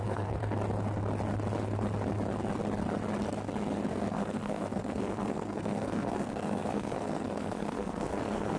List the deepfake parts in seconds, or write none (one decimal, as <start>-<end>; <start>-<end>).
0.0-0.4; 3.9-8.6